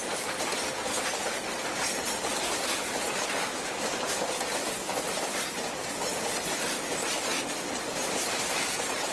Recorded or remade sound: recorded